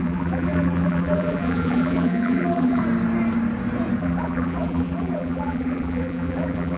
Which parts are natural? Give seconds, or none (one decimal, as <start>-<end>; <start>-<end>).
2.8-4.0